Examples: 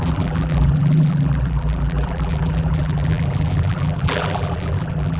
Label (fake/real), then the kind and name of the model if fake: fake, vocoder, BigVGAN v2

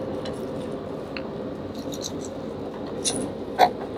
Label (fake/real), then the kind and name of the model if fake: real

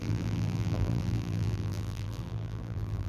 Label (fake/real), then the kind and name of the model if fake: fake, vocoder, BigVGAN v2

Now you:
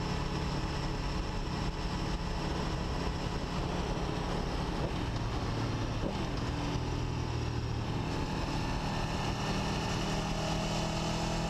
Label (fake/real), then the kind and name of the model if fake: real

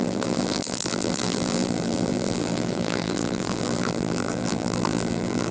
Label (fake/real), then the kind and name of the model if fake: fake, vocoder, BigVGAN v2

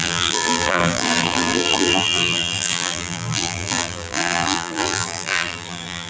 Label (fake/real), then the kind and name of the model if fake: fake, vocoder, BigVGAN v2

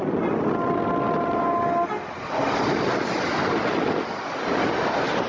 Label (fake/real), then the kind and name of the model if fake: real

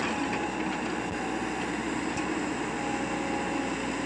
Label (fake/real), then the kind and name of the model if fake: real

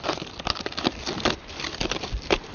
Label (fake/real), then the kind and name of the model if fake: fake, vocoder, BigVGAN v2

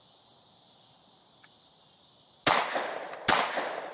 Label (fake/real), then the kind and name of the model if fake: fake, vocoder, BigVGAN v2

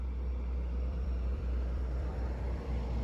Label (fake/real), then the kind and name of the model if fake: fake, vocoder, BigVGAN v2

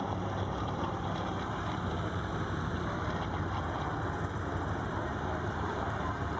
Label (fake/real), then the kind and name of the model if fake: fake, vocoder, BigVGAN v2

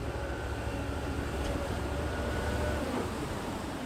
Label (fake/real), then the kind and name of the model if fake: fake, vocoder, BigVGAN v2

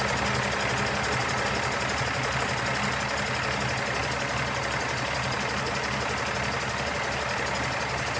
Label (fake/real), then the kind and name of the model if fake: real